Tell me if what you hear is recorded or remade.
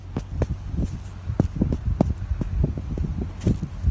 recorded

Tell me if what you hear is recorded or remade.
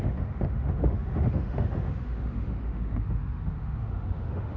remade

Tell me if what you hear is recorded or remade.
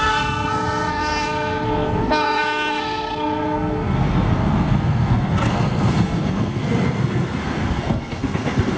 remade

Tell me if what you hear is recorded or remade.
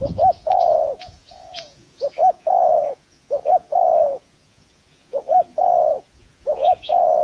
remade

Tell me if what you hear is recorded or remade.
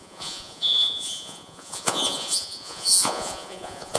remade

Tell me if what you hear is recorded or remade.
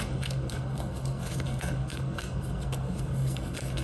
remade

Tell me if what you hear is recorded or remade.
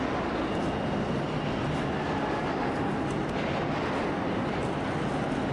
recorded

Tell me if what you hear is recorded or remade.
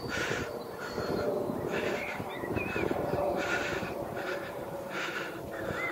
remade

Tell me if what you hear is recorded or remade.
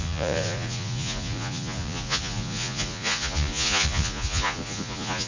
remade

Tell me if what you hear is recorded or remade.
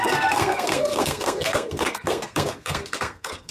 remade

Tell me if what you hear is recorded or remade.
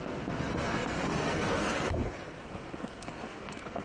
remade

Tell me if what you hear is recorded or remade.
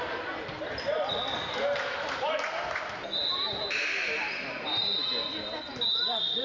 recorded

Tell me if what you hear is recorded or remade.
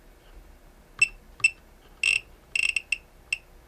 recorded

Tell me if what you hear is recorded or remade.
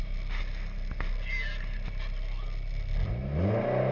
recorded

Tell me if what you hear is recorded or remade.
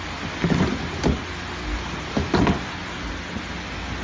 recorded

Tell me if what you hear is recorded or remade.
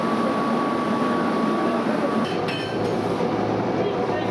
remade